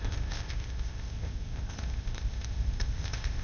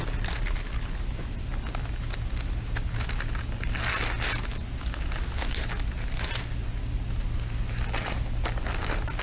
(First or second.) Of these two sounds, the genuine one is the second